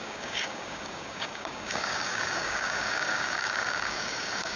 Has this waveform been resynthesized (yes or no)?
yes